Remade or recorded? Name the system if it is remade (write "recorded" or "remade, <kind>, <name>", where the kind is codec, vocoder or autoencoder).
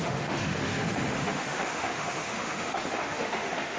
remade, autoencoder, DAC-VAE